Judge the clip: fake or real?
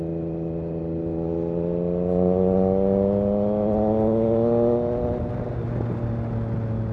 real